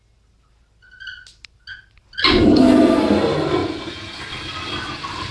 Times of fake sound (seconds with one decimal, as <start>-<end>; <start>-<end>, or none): 3.6-4.2